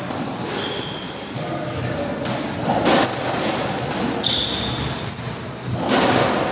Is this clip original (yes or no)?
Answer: yes